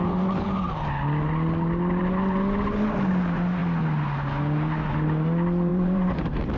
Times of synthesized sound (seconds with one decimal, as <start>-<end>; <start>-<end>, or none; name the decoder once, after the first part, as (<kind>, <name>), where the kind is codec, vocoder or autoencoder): 2.0-3.1 (vocoder, BigVGAN v2); 5.7-6.6